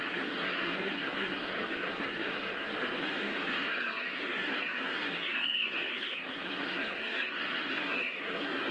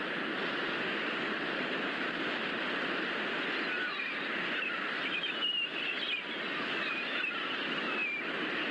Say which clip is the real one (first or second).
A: second